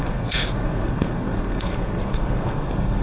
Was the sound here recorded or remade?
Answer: remade